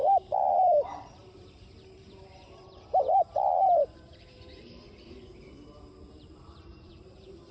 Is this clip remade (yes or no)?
yes